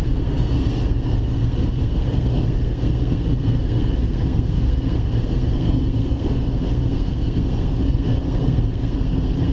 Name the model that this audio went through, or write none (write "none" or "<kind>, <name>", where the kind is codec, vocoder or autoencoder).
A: codec, SNAC